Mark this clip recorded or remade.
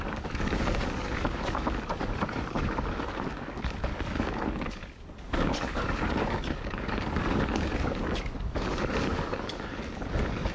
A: remade